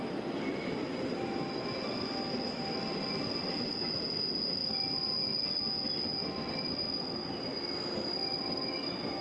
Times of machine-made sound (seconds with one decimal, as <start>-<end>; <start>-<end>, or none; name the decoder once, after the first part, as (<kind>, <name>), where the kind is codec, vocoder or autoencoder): none